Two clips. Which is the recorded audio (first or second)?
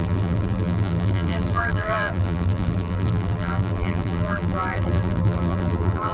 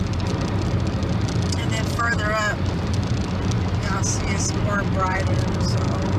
second